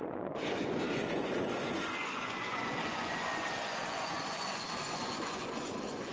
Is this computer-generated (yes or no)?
yes